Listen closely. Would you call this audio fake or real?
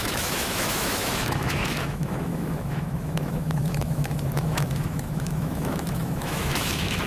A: fake